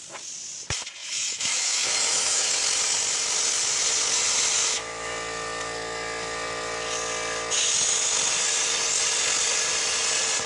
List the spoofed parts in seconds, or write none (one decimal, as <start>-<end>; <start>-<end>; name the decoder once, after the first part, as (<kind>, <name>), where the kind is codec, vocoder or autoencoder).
1.0-2.5 (autoencoder, DAC-VAE); 4.6-5.1